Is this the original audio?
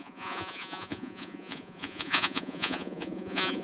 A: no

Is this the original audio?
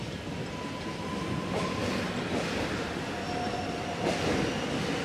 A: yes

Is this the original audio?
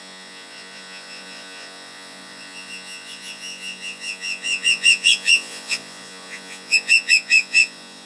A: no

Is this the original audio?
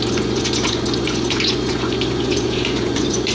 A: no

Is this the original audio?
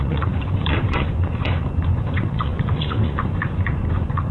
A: no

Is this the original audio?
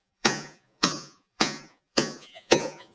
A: no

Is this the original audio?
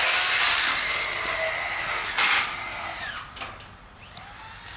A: yes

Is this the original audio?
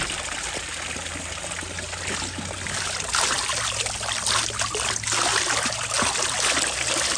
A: yes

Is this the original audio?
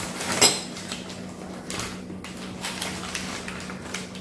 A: yes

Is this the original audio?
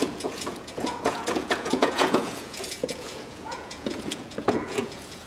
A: no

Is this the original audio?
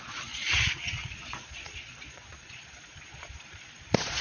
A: no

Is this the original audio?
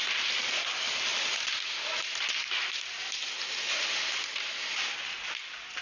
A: yes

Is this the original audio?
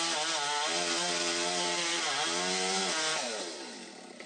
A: yes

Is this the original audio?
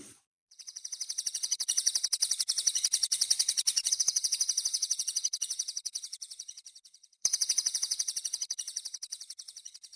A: no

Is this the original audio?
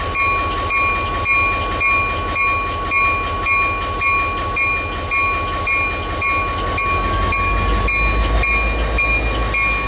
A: yes